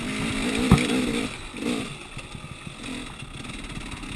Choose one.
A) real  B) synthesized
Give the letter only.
A